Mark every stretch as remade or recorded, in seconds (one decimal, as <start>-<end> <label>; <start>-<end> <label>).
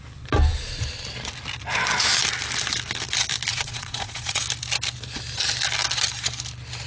0.0-3.5 recorded; 3.5-4.4 remade; 4.4-6.9 recorded